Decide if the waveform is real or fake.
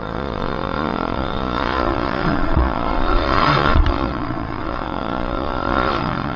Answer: fake